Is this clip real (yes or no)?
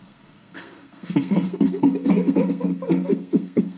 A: no